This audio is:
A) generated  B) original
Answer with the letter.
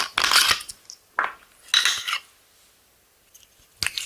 B